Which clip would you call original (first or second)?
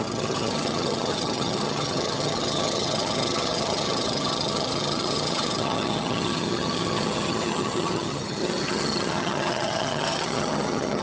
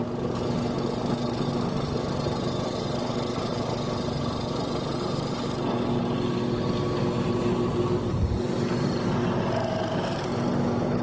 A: second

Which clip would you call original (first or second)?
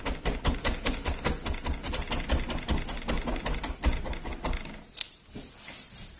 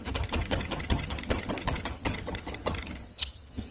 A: first